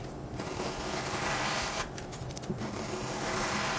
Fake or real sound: real